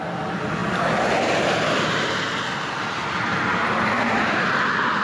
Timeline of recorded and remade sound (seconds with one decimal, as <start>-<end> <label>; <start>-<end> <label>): 0.0-5.0 recorded